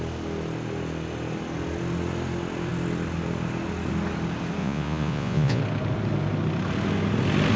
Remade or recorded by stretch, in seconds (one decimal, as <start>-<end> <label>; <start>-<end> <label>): 0.0-4.6 recorded; 4.6-5.6 remade; 5.6-7.6 recorded